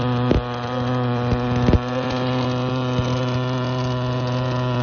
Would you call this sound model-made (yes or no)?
no